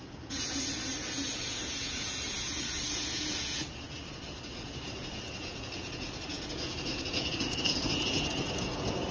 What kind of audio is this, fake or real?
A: fake